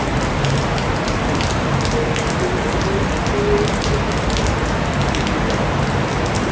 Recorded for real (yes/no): yes